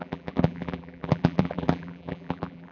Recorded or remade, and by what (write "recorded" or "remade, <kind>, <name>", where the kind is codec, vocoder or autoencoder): remade, vocoder, BigVGAN v2